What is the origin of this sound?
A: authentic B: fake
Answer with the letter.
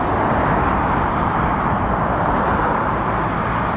A